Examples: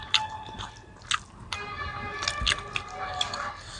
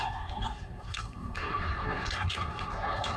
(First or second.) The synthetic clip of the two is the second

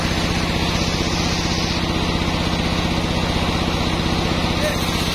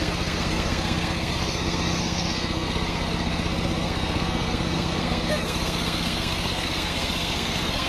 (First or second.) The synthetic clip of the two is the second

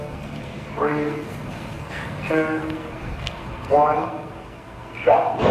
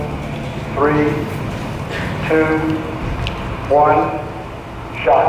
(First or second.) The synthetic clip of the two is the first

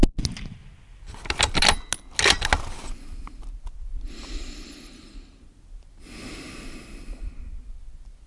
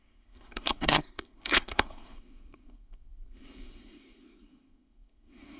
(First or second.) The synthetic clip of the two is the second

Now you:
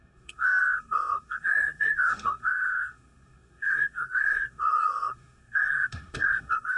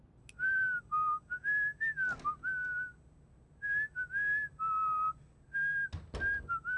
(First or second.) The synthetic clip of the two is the first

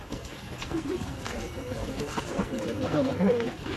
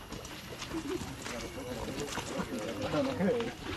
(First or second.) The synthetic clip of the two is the first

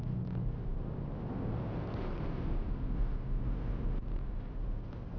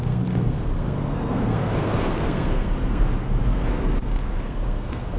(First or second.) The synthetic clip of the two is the second